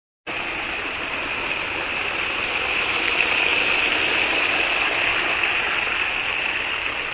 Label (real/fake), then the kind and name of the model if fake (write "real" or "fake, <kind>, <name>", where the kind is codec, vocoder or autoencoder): real